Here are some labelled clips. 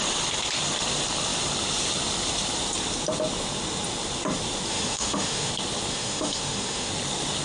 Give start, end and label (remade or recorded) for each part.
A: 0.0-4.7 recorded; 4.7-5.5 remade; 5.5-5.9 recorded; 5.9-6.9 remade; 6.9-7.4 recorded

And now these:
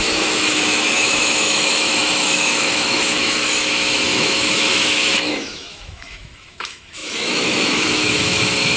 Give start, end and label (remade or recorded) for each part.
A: 0.0-8.8 remade

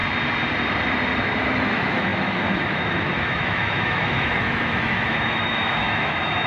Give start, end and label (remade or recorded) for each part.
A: 0.0-1.2 recorded; 1.2-6.5 remade

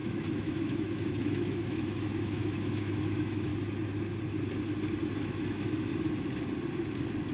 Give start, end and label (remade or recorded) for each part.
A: 0.0-3.5 remade; 3.5-5.2 recorded; 5.2-5.9 remade; 5.9-7.3 recorded